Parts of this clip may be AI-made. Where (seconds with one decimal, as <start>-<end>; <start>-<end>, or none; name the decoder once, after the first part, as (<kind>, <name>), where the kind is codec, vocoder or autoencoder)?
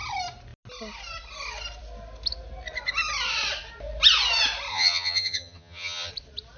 4.7-6.1 (vocoder, HiFi-GAN)